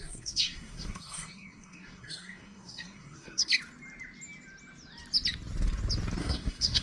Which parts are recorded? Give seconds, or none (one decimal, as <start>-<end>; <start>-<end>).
3.5-6.2